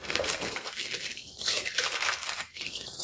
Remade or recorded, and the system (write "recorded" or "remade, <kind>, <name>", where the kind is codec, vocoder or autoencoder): remade, codec, SNAC